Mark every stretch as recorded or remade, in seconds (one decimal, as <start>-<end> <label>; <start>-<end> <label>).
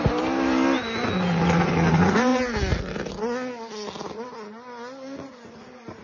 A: 0.0-6.0 recorded